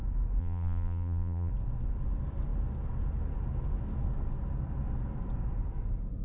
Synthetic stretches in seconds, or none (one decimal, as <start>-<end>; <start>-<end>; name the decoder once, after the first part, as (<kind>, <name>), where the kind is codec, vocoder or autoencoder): 0.4-1.5 (vocoder, BigVGAN v2)